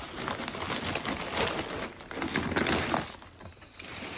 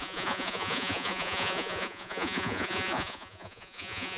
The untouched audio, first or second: first